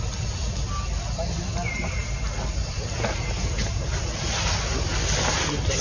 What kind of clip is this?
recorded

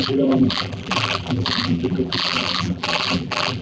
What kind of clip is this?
remade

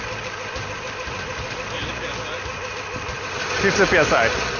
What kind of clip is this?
recorded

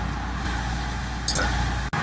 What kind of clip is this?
recorded